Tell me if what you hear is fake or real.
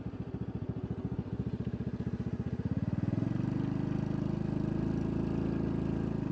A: real